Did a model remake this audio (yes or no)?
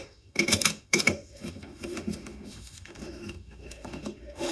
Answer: yes